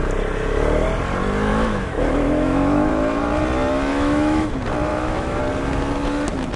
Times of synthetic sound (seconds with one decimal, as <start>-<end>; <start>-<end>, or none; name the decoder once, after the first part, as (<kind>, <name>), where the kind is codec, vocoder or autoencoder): 1.5-2.9 (autoencoder, DAC-VAE); 3.9-4.5; 4.9-5.4

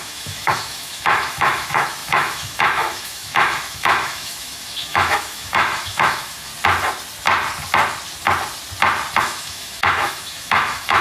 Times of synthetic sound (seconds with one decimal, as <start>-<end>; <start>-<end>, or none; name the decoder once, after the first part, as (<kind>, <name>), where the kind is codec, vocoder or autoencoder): 0.0-6.5 (autoencoder, DAC-VAE); 9.2-11.0